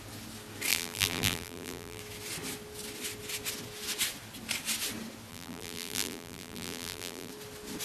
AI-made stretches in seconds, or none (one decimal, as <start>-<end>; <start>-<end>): 0.7-2.0; 5.3-7.3